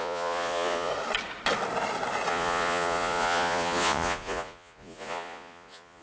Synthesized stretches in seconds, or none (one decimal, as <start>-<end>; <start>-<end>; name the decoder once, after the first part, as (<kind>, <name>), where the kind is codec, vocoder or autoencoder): 0.0-0.9 (vocoder, Vocos); 2.3-6.0

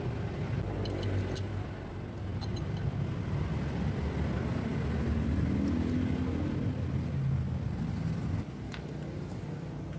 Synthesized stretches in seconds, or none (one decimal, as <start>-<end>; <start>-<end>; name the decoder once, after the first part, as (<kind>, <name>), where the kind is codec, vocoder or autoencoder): none

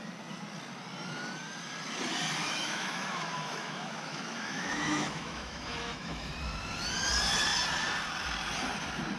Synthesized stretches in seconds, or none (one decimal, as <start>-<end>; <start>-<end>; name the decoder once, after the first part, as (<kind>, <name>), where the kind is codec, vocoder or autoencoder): 2.4-6.3 (autoencoder, DAC-VAE)

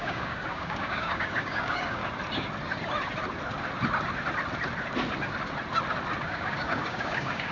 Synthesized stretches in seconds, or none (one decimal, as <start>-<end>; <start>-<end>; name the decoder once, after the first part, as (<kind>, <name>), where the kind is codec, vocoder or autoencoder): 0.0-2.0 (codec, DAC); 6.2-7.5

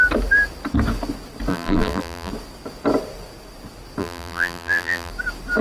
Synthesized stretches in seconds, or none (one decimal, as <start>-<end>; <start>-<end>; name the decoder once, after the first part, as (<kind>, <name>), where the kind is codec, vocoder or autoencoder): 1.5-2.3 (vocoder, BigVGAN v2); 4.0-5.1

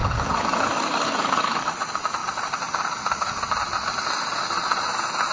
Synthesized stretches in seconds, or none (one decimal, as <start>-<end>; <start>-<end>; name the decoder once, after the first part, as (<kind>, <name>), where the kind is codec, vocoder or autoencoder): 0.0-1.7 (codec, DAC)